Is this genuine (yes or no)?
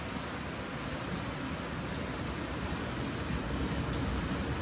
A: yes